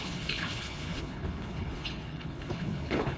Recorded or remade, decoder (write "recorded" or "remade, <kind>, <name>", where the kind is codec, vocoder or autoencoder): remade, codec, HILCodec